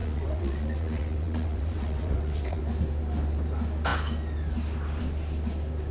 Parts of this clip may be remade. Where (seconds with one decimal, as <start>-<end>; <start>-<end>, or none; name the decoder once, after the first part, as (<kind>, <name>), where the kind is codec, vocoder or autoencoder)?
0.0-2.6 (vocoder, WaveNeXt)